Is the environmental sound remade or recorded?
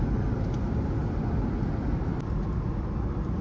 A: recorded